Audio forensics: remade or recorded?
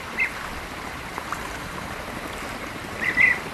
remade